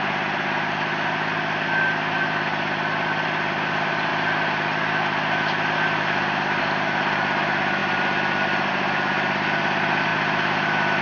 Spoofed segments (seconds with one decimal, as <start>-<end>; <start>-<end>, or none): none